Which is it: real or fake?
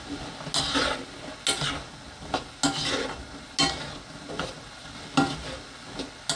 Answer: real